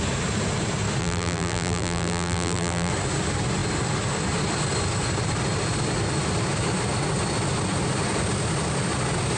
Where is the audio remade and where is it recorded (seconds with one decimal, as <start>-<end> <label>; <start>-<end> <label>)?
0.0-1.0 recorded; 1.0-2.9 remade; 2.9-9.4 recorded